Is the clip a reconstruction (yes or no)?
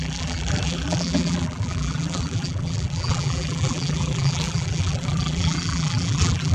yes